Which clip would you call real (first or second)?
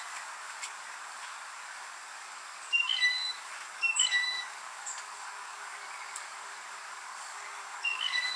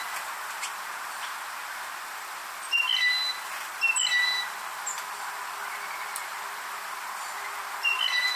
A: second